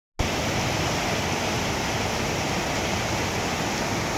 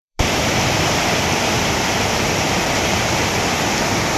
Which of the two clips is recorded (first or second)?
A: first